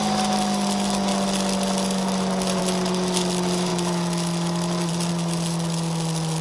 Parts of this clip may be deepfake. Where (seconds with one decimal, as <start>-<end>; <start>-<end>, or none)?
none